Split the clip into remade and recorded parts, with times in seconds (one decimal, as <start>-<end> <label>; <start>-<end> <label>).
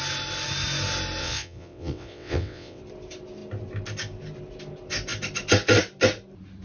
0.0-1.2 recorded; 1.2-2.8 remade; 2.8-6.6 recorded